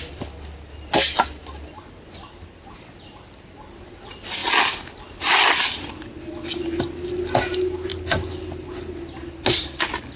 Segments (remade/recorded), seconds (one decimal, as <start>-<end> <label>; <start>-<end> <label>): 0.0-10.2 recorded